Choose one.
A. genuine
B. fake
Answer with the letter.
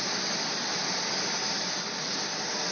A